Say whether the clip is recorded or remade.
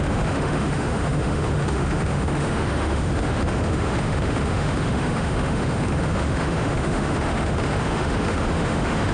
remade